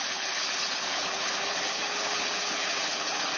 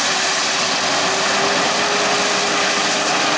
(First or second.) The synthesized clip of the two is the first